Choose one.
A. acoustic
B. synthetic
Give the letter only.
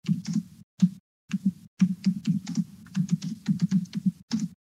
A